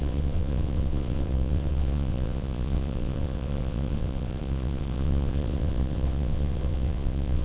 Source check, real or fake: fake